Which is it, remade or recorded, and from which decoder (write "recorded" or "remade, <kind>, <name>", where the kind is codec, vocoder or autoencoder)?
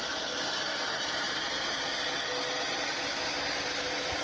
recorded